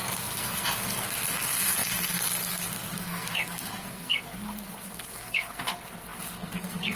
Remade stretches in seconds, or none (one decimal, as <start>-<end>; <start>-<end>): 0.0-7.0